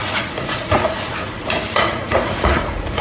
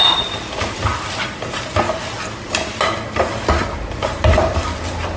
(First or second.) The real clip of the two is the second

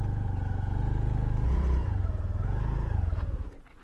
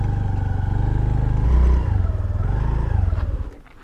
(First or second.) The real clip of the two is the second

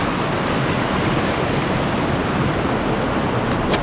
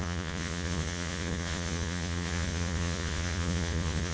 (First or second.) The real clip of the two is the first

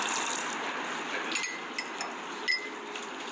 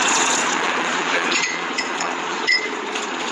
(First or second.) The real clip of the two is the first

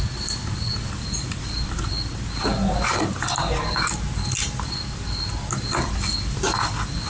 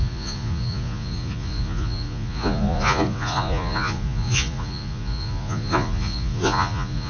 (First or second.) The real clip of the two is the first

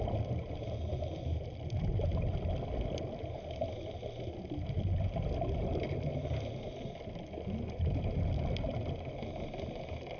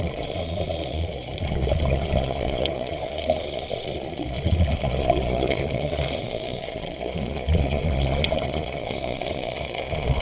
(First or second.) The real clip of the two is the first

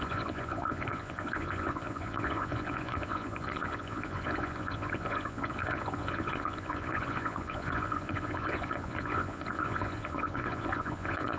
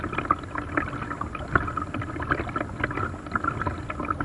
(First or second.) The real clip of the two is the second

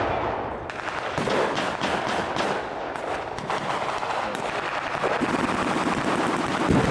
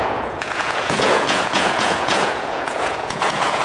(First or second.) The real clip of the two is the first